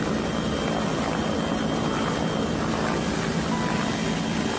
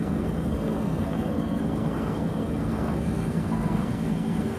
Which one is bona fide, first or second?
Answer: first